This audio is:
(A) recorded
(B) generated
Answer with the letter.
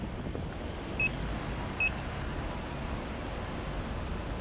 A